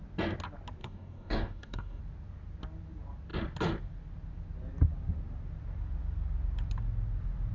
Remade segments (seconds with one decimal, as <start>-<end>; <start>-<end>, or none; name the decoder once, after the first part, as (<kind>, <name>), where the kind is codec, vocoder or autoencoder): 0.8-2.0 (codec, DAC)